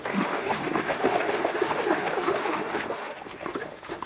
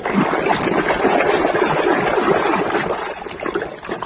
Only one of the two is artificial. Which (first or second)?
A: first